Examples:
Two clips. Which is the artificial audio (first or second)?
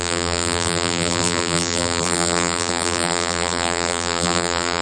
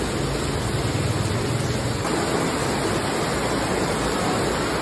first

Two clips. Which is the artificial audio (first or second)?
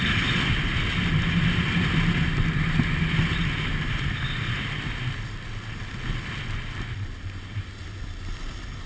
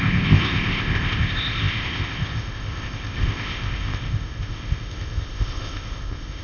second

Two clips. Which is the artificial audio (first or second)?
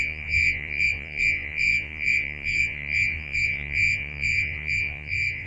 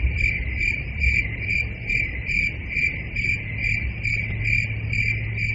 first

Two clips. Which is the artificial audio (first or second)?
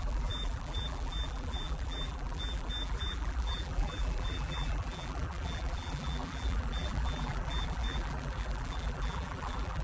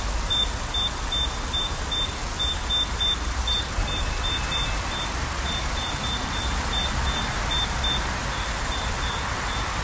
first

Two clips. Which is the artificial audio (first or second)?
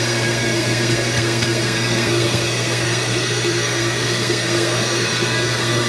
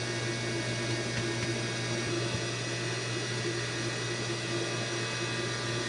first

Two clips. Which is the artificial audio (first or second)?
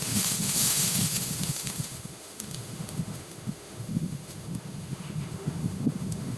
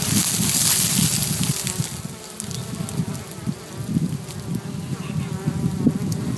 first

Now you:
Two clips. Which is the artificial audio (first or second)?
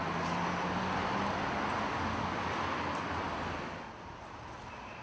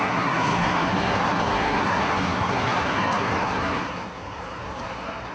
second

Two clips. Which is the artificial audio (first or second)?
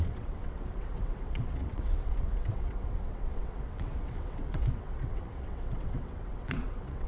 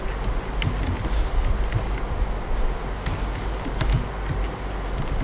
first